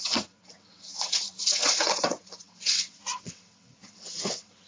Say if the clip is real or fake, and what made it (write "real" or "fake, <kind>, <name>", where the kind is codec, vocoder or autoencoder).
fake, vocoder, WaveNeXt